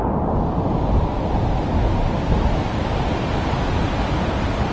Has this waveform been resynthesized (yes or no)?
no